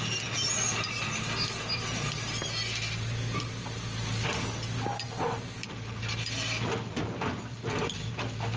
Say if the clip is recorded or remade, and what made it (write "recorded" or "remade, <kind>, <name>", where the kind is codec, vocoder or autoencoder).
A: recorded